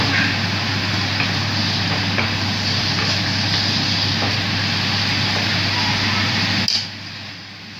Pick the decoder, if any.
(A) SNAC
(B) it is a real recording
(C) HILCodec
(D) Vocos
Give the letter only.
B